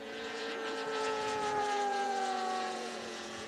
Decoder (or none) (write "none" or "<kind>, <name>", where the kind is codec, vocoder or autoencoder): vocoder, Vocos